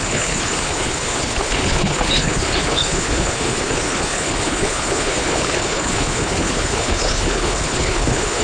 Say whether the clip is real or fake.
fake